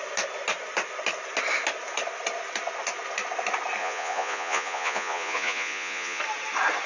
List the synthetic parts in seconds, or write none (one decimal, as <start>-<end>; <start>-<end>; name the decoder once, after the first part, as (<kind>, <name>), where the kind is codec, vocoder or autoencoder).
3.8-6.2 (vocoder, Vocos)